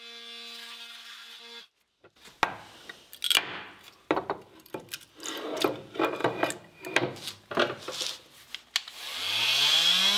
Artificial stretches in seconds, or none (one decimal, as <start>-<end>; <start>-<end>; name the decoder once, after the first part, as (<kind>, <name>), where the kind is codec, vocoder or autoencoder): none